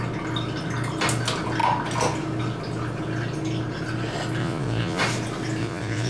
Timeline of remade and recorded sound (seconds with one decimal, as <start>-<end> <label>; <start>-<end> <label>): 0.0-4.4 recorded; 4.4-5.0 remade; 5.0-5.6 recorded; 5.6-6.1 remade